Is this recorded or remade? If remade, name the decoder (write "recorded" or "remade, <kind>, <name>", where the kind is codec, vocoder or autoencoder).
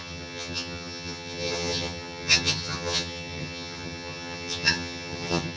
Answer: remade, vocoder, HiFi-GAN